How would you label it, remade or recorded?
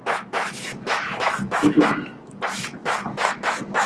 remade